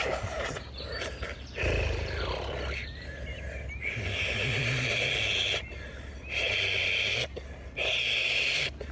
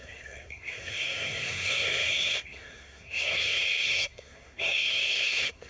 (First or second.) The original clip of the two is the first